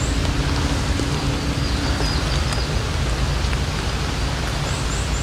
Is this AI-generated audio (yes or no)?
no